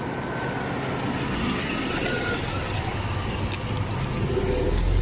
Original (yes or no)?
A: yes